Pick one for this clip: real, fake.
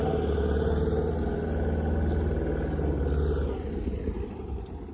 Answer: real